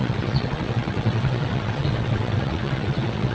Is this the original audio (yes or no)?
no